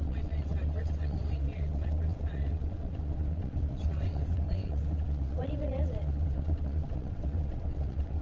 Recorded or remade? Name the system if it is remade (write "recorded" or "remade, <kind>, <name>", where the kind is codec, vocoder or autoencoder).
remade, vocoder, WaveNeXt